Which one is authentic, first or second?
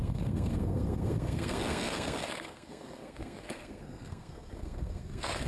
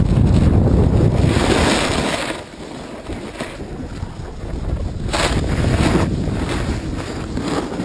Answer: second